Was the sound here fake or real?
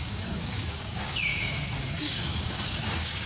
fake